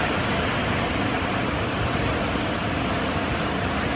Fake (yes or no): no